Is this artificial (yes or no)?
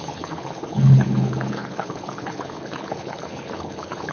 yes